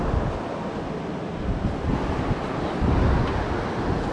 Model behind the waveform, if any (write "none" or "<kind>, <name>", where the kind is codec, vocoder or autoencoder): none